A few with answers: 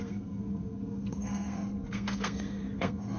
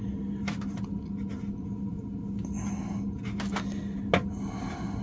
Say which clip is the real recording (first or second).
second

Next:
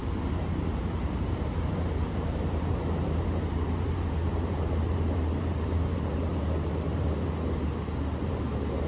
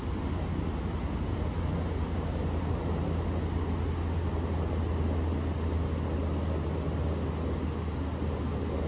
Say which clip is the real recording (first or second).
second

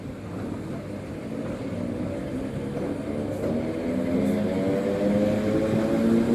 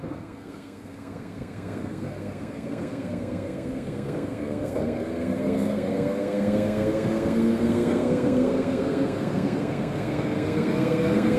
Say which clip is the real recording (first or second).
first